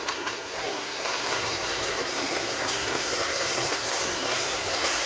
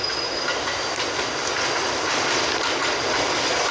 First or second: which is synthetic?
first